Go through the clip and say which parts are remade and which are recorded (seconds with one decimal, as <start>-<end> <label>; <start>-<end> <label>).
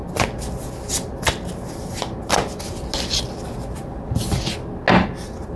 0.0-5.6 recorded